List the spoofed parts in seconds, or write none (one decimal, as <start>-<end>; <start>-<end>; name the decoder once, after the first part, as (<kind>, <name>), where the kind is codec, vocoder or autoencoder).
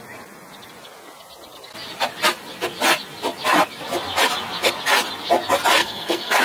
5.8-6.4 (codec, SNAC)